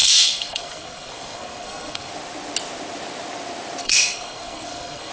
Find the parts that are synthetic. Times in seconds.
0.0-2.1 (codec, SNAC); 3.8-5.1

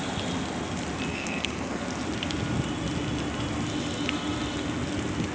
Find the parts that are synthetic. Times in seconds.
1.1-1.8 (codec, SNAC)

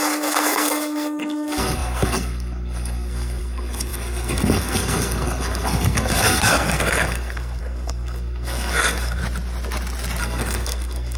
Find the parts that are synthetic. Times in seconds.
0.0-9.2 (codec, SNAC); 10.2-11.2

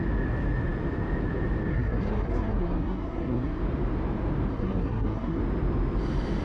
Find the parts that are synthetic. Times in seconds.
1.7-3.6 (codec, SNAC); 4.5-5.4

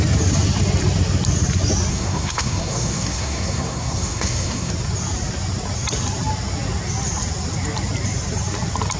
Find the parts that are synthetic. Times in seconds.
1.9-4.7 (codec, SNAC)